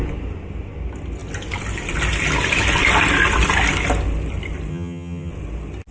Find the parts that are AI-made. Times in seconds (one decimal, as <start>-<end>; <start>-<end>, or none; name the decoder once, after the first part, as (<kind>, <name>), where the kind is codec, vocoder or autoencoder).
4.7-5.3 (vocoder, HiFi-GAN)